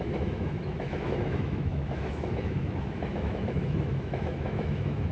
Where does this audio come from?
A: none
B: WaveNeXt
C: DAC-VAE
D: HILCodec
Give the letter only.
C